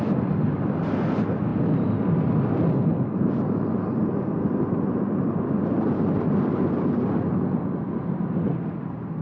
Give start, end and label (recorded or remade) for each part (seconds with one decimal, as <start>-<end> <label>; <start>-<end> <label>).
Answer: 0.0-9.2 recorded